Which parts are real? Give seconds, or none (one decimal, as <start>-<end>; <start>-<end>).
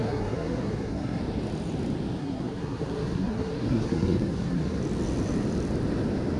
1.2-2.2; 4.8-6.4